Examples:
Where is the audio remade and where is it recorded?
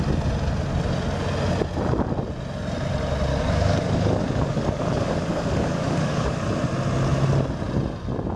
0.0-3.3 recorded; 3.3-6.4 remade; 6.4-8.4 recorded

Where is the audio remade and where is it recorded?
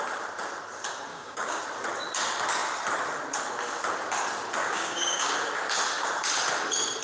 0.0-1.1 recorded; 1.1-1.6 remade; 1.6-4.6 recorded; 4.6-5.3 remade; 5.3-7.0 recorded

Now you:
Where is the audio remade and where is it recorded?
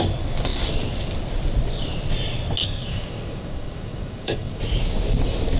0.0-2.6 recorded; 2.6-4.6 remade; 4.6-5.6 recorded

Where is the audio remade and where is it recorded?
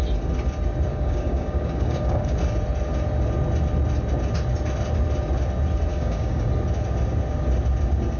0.0-0.9 recorded; 0.9-2.4 remade; 2.4-5.9 recorded; 5.9-6.5 remade; 6.5-8.2 recorded